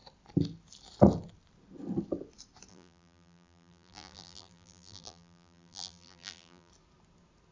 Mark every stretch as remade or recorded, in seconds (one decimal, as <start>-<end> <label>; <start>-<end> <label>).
0.0-2.7 recorded; 2.7-6.7 remade; 6.7-7.5 recorded